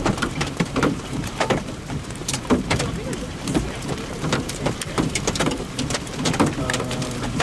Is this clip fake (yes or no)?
yes